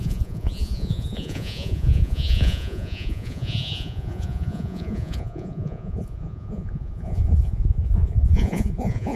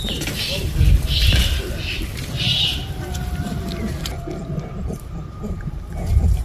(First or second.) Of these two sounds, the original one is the second